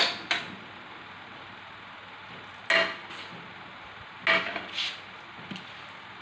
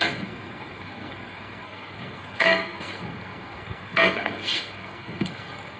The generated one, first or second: second